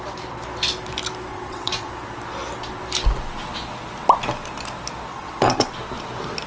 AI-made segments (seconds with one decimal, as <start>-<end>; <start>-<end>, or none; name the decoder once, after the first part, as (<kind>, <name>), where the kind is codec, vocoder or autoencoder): 1.3-1.9 (vocoder, WaveNeXt); 5.1-5.7